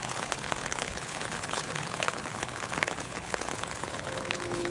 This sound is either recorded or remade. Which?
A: remade